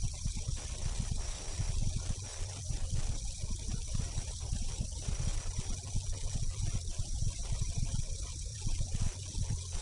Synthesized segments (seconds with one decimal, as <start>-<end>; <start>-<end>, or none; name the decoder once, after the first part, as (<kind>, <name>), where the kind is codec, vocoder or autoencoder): 0.0-1.8 (vocoder, BigVGAN v2); 3.1-5.3; 7.0-8.5